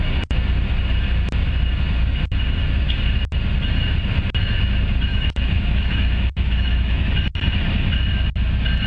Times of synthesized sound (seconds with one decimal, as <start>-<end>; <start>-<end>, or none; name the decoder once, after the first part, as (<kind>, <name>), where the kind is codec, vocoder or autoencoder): 5.1-7.1 (autoencoder, DAC-VAE)